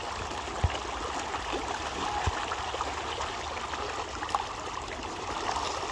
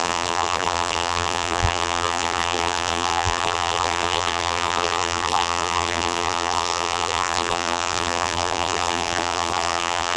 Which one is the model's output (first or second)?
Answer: second